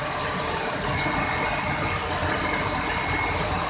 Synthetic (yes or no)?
no